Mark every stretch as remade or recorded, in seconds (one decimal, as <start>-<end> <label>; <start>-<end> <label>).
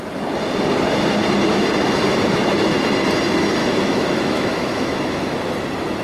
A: 0.0-3.6 recorded; 3.6-5.4 remade; 5.4-6.0 recorded